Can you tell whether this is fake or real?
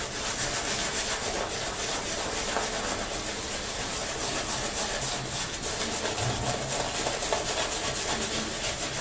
real